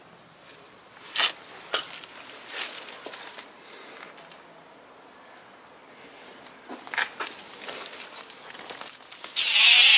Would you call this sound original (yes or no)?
yes